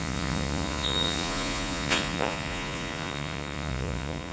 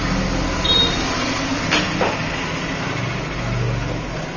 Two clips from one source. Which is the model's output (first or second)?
first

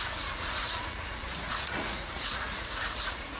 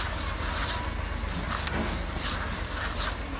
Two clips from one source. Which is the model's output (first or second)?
first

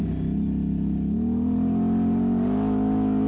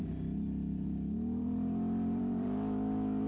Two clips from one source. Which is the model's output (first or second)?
second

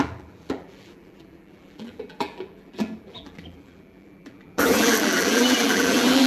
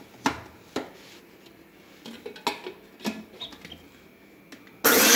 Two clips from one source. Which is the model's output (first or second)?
first